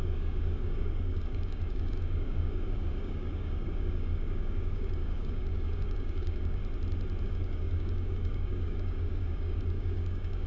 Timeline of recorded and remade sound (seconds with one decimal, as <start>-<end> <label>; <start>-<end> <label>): 0.0-6.6 remade; 6.6-7.2 recorded; 7.2-10.5 remade